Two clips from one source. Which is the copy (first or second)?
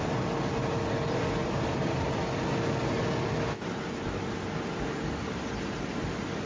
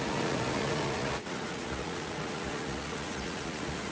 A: second